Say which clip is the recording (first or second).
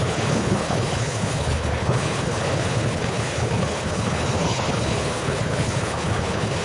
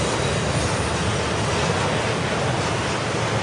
second